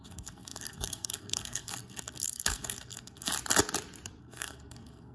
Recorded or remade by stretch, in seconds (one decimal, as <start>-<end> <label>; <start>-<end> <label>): 0.0-3.3 remade; 3.3-4.2 recorded; 4.2-5.1 remade